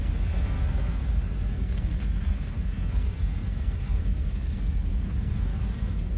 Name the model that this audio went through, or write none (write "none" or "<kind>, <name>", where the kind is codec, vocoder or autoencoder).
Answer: codec, SNAC